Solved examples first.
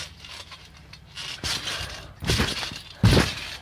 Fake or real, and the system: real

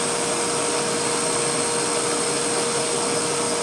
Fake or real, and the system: real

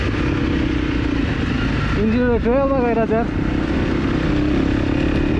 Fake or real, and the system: real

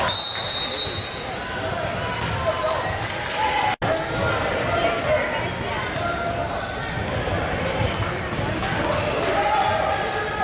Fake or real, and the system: real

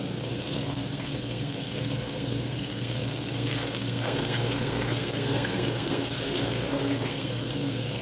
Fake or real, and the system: fake, codec, SNAC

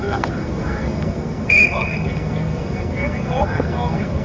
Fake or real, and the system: fake, codec, SNAC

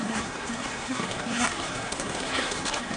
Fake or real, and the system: fake, codec, SNAC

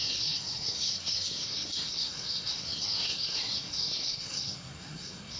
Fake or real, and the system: fake, codec, SNAC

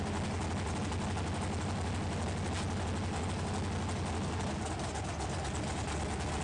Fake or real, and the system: real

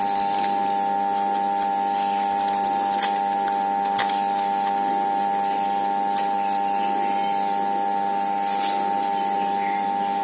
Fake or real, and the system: real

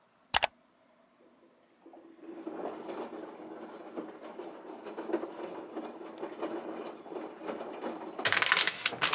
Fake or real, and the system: real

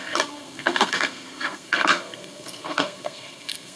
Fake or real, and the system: fake, codec, SNAC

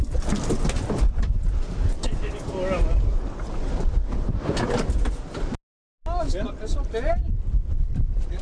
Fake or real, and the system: real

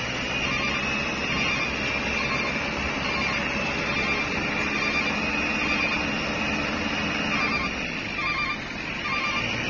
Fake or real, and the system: real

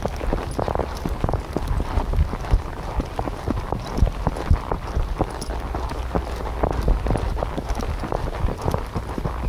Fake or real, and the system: real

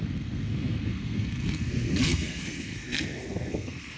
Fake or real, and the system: fake, codec, SNAC